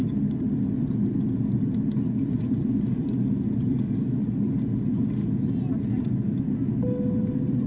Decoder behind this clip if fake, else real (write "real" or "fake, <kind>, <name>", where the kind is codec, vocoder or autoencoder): real